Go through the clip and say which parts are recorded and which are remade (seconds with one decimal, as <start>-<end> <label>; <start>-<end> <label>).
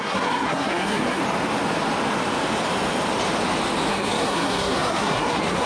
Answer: 0.0-1.2 remade; 1.2-3.9 recorded; 3.9-5.7 remade